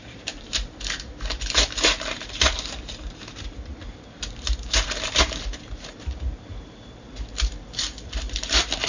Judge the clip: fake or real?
fake